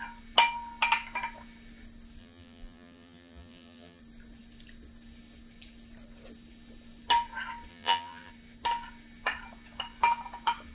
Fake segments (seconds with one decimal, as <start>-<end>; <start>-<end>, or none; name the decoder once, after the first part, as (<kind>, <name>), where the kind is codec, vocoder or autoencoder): 2.2-4.0 (vocoder, BigVGAN v2); 7.7-8.3